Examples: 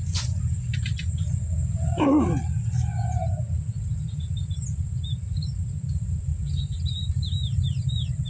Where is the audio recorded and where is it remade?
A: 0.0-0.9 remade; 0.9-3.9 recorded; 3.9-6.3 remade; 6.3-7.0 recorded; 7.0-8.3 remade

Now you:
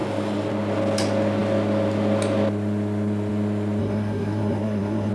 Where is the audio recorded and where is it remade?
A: 0.0-3.8 recorded; 3.8-5.1 remade

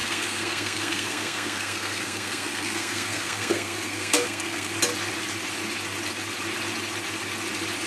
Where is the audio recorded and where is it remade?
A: 0.0-4.7 remade; 4.7-7.9 recorded

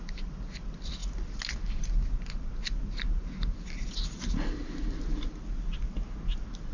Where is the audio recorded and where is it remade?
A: 0.0-6.7 recorded

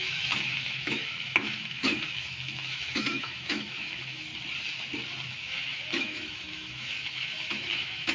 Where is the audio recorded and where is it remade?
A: 0.0-4.3 remade; 4.3-5.3 recorded; 5.3-8.1 remade

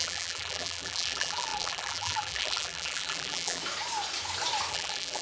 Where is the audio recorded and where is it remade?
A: 0.0-3.6 remade; 3.6-4.7 recorded; 4.7-5.2 remade